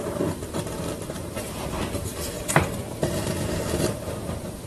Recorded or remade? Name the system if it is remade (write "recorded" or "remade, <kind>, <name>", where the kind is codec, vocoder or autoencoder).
remade, vocoder, BigVGAN v2